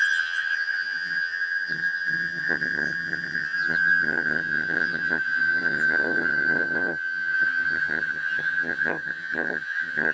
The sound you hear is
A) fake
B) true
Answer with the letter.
A